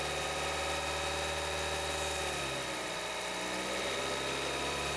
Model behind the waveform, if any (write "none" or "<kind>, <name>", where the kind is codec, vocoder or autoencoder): vocoder, BigVGAN v2